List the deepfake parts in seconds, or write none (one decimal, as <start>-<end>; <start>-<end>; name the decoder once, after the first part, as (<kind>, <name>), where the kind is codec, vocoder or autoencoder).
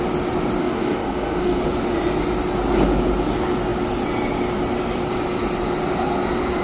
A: 0.6-1.6 (codec, DAC)